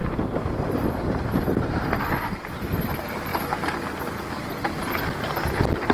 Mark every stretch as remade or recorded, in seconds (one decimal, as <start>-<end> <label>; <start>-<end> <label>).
0.0-2.7 remade; 2.7-5.9 recorded